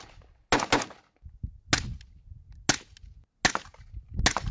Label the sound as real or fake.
real